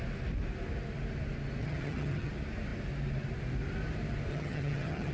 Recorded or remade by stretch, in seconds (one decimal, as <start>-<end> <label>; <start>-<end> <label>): 0.0-1.6 recorded; 1.6-2.3 remade; 2.3-4.3 recorded; 4.3-5.1 remade

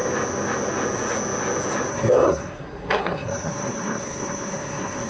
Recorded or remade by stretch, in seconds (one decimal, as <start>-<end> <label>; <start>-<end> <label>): 0.0-1.9 recorded; 1.9-5.1 remade

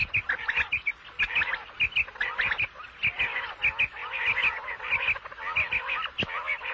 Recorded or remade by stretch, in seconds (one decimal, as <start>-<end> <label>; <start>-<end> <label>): 0.0-6.7 recorded

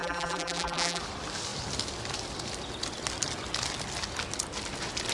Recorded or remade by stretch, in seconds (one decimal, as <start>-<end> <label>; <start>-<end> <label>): 0.0-1.0 remade; 1.0-5.1 recorded

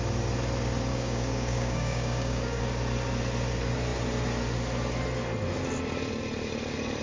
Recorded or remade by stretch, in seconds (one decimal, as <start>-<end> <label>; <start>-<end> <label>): 0.0-0.9 recorded; 0.9-2.6 remade; 2.6-7.0 recorded

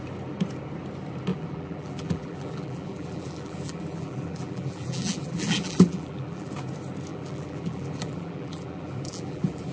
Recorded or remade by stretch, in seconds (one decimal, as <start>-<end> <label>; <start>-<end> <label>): 0.0-1.3 recorded; 1.3-6.5 remade; 6.5-7.1 recorded; 7.1-9.7 remade